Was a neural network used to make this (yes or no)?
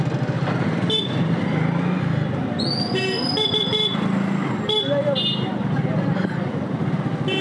no